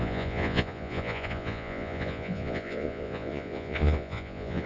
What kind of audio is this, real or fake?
fake